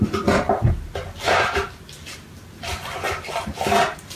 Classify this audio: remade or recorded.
recorded